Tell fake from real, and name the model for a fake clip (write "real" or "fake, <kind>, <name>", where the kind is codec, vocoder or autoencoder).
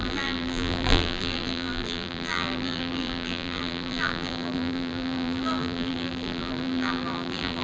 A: fake, vocoder, BigVGAN v2